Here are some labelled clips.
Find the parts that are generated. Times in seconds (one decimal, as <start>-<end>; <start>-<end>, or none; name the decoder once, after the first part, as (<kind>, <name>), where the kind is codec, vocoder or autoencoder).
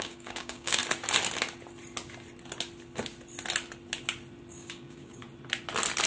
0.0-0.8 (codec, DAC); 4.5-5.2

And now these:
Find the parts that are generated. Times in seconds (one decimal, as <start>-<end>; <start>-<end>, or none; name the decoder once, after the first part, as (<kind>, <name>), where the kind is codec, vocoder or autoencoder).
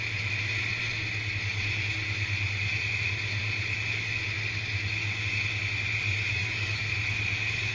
6.3-6.8 (codec, DAC)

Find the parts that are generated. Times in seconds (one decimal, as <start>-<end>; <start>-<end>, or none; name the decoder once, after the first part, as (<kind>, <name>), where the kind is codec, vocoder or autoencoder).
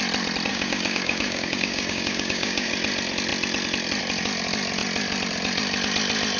0.5-2.7 (codec, DAC)